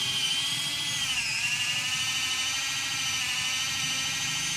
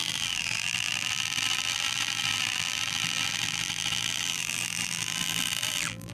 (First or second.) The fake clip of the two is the second